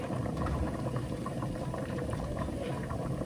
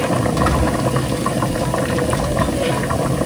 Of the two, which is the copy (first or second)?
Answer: first